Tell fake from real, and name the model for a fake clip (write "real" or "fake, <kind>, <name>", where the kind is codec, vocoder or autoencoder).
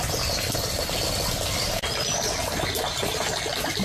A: real